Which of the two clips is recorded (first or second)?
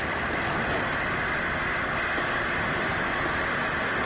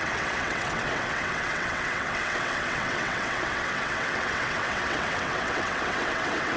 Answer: first